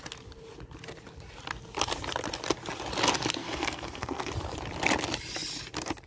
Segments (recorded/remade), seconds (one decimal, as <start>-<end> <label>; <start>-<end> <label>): 0.0-3.4 recorded; 3.4-4.3 remade; 4.3-6.1 recorded